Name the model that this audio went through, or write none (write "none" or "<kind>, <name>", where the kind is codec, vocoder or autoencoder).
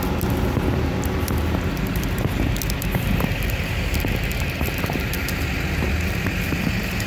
none